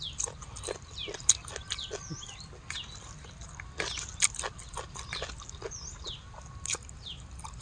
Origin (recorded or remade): recorded